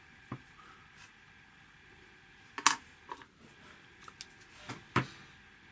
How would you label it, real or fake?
real